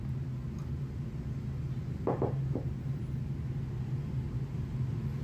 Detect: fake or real real